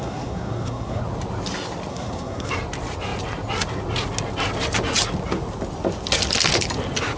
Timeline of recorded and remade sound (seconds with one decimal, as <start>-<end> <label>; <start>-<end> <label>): 0.0-1.0 remade; 1.0-1.9 recorded; 1.9-2.5 remade; 2.5-7.2 recorded